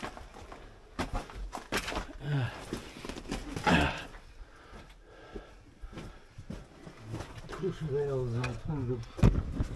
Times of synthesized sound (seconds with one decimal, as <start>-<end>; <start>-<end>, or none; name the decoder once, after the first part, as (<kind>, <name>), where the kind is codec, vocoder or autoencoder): none